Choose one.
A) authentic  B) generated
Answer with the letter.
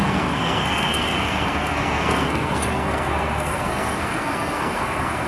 B